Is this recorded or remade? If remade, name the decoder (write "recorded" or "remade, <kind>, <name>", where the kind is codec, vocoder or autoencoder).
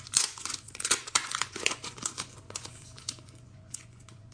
remade, vocoder, Vocos